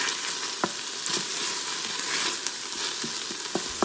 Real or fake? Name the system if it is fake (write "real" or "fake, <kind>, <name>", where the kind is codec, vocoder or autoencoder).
real